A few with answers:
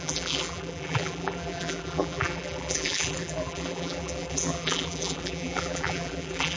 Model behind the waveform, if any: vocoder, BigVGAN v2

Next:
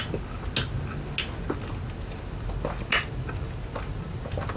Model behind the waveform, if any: none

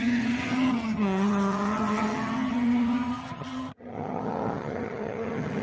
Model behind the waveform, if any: vocoder, HiFi-GAN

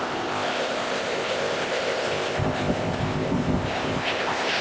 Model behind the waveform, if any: codec, ZipCodec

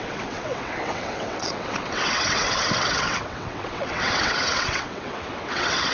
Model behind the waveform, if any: vocoder, WaveNeXt